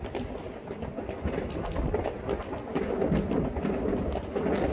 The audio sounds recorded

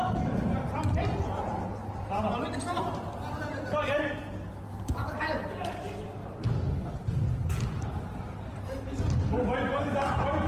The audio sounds recorded